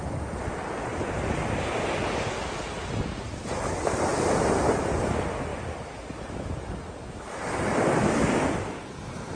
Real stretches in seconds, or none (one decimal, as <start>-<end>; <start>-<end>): 0.0-9.4